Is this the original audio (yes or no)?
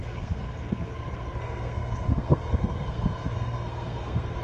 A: no